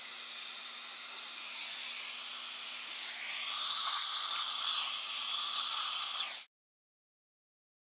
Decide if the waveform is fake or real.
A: real